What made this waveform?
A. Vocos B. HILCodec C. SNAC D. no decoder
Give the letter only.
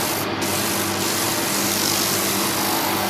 D